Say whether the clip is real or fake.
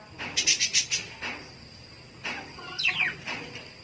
real